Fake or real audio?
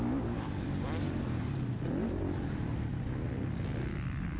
real